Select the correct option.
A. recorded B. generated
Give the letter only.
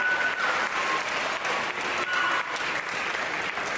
A